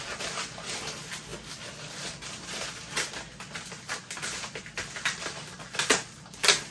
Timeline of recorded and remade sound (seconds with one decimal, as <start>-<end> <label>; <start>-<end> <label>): 0.0-6.7 recorded